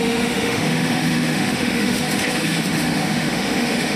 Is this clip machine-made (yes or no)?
yes